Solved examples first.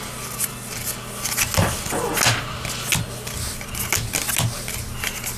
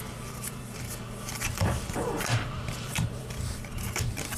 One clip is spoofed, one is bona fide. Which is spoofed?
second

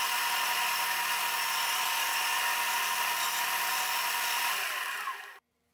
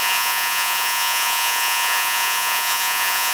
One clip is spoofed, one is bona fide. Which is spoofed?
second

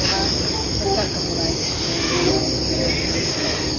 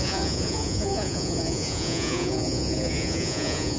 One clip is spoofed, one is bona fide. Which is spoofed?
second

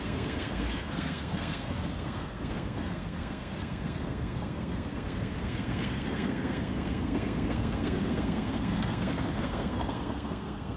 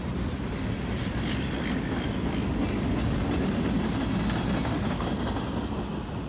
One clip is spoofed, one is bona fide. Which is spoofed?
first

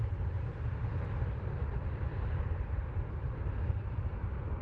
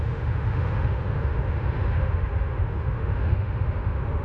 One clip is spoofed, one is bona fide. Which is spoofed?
second